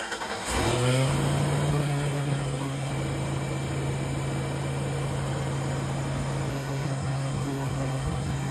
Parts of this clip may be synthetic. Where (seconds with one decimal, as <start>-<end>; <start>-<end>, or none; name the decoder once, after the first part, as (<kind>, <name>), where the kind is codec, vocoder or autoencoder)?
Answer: 0.0-1.1 (codec, SNAC); 1.7-2.9; 6.5-8.5